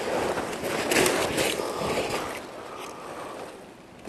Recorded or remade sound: recorded